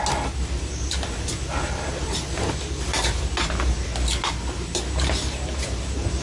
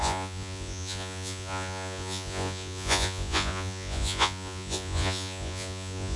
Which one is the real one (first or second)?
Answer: first